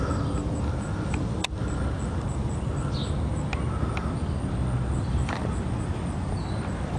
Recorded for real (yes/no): yes